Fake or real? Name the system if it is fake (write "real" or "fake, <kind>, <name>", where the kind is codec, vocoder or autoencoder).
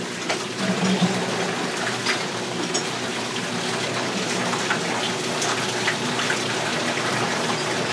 real